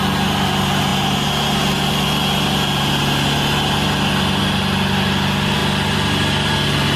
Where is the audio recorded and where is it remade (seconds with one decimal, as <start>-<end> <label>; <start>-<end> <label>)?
0.0-7.0 recorded